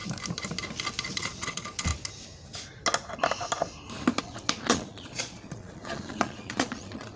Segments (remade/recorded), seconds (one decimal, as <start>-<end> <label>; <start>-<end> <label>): 0.0-1.1 recorded; 1.1-1.9 remade; 1.9-4.2 recorded; 4.2-7.2 remade